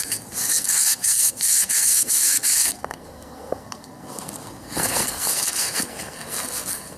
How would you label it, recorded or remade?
remade